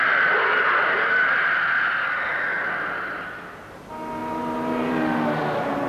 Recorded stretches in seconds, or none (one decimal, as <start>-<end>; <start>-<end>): 0.0-5.9